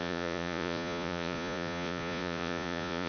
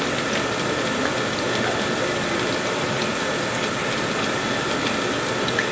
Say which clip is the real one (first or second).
second